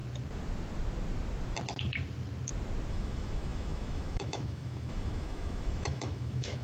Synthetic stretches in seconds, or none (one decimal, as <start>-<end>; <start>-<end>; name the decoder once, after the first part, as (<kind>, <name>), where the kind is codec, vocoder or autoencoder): 2.9-6.6 (autoencoder, DAC-VAE)